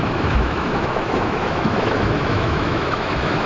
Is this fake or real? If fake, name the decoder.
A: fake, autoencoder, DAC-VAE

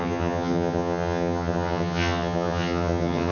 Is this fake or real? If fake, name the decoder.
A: fake, vocoder, HiFi-GAN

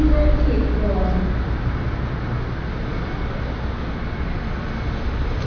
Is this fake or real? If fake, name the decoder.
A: real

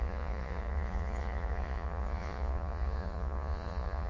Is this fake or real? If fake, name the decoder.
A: fake, vocoder, Vocos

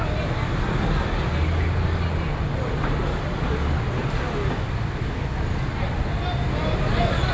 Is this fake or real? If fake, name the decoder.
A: real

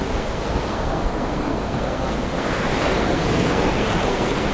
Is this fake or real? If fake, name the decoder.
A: fake, codec, SNAC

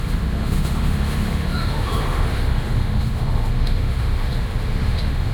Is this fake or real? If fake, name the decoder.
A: fake, autoencoder, DAC-VAE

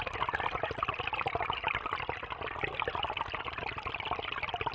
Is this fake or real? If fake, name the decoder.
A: real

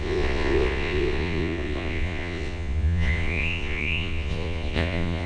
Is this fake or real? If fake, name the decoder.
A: fake, vocoder, Vocos